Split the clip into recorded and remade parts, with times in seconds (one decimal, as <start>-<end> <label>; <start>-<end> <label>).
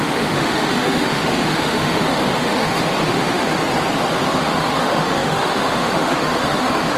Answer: 0.0-3.6 remade; 3.6-4.3 recorded; 4.3-7.0 remade